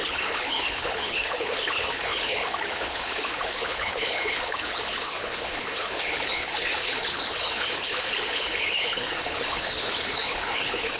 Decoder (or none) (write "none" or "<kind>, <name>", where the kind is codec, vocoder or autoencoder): codec, HILCodec